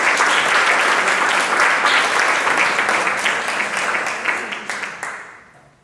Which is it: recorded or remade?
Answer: recorded